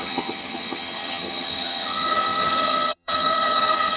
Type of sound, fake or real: fake